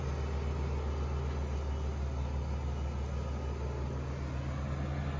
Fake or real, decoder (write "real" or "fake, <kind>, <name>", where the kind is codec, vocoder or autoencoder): real